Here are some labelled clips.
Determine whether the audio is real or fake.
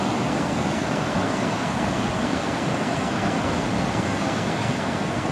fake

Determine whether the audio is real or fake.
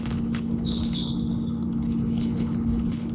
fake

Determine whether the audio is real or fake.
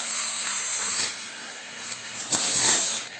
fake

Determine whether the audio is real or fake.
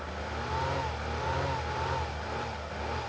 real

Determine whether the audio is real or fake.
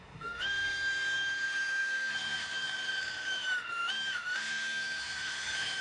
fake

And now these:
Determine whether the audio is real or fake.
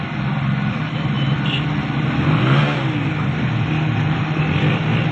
real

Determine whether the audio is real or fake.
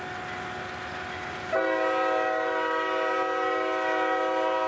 real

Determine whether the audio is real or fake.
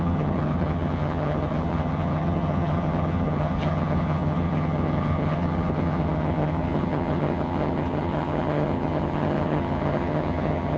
fake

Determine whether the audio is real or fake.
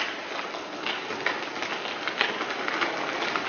real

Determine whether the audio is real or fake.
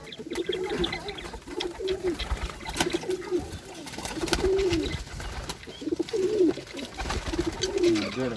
real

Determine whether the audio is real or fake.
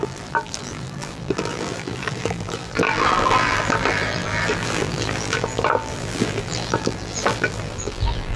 fake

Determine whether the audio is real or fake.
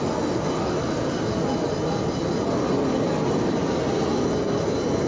real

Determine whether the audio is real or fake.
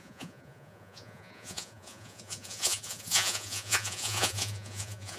fake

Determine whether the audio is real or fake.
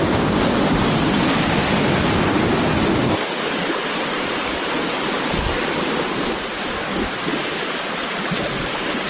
real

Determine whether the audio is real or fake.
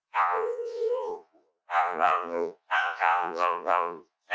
fake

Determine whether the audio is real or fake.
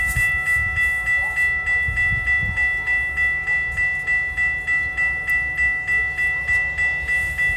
real